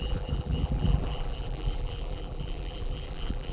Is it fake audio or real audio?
fake